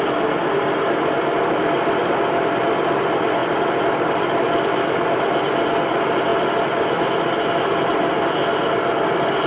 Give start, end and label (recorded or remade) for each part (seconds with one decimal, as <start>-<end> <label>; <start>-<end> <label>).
0.0-1.3 recorded; 1.3-3.0 remade; 3.0-3.4 recorded; 3.4-4.4 remade; 4.4-9.5 recorded